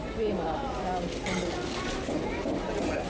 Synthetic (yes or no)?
no